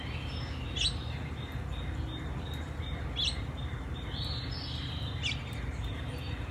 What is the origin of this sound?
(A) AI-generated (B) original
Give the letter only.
B